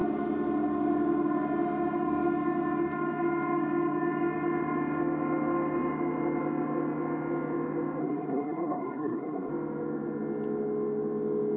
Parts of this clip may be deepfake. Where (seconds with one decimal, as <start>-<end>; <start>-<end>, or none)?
8.0-9.5